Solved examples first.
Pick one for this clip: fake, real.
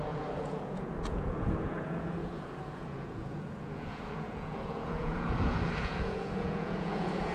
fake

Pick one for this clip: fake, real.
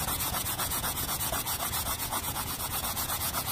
fake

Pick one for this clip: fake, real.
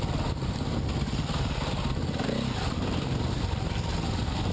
real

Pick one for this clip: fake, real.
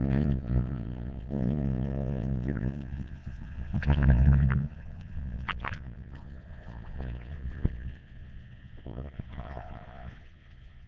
fake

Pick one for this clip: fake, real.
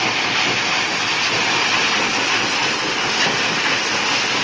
real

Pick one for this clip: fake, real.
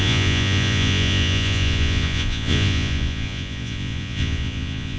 fake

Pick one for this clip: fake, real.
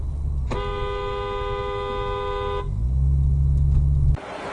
real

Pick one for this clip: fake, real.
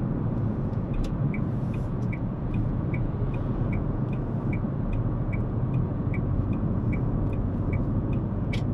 fake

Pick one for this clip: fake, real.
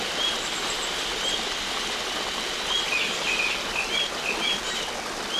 real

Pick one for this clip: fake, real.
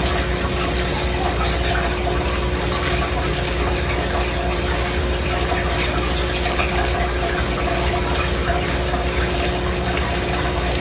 real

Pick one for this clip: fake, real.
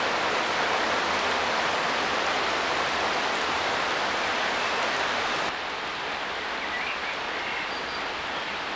real